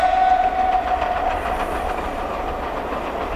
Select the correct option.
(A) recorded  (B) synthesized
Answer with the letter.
A